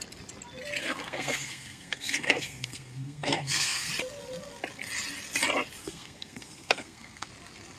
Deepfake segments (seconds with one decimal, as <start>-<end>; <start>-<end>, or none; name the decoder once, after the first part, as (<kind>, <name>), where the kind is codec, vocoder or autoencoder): 0.8-3.9 (codec, SNAC); 5.8-7.3